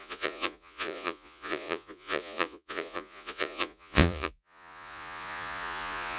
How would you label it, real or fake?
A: fake